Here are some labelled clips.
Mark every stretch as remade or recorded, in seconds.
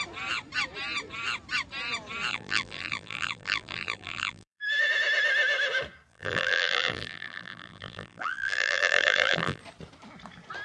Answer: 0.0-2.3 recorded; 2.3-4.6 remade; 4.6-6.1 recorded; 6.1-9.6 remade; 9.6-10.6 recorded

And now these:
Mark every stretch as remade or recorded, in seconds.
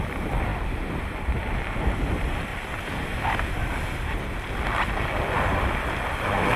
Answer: 0.0-2.5 remade; 2.5-6.6 recorded